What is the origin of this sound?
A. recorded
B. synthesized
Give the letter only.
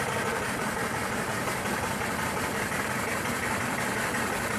A